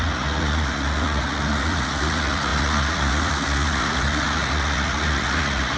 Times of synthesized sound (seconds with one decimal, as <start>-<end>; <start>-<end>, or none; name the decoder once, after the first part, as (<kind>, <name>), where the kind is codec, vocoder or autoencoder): 0.0-5.8 (vocoder, Vocos)